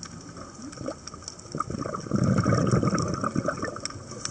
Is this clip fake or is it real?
real